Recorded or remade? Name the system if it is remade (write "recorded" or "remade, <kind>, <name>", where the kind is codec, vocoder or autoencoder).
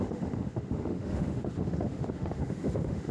remade, autoencoder, DAC-VAE